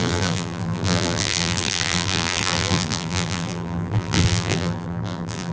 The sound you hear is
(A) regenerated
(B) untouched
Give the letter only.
A